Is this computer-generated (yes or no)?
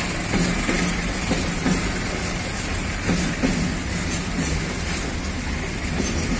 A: no